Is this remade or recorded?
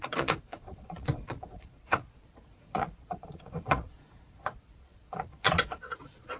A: remade